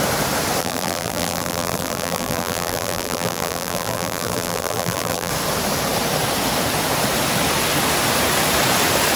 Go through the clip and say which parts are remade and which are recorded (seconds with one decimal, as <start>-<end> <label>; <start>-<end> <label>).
0.0-0.6 recorded; 0.6-5.3 remade; 5.3-9.2 recorded

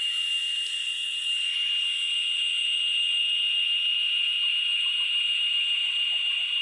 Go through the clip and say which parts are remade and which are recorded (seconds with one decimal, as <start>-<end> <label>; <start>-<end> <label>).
0.0-4.0 recorded; 4.0-6.6 remade

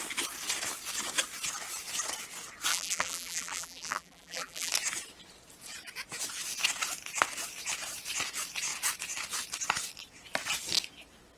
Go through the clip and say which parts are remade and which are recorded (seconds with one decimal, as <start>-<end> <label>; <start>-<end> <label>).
0.0-2.7 recorded; 2.7-4.7 remade; 4.7-11.4 recorded

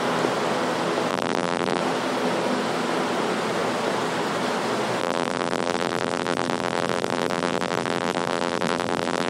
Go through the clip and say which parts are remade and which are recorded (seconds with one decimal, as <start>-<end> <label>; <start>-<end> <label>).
0.0-1.1 recorded; 1.1-1.8 remade; 1.8-5.0 recorded; 5.0-9.3 remade

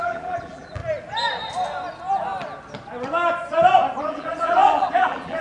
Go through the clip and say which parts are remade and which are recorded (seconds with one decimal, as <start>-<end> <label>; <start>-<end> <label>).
0.0-0.8 remade; 0.8-4.0 recorded; 4.0-5.4 remade